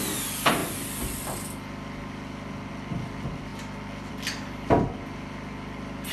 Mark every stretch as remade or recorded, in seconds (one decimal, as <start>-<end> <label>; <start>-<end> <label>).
0.0-6.1 recorded